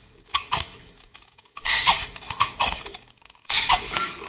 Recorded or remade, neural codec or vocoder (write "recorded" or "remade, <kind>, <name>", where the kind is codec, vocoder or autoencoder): remade, codec, DAC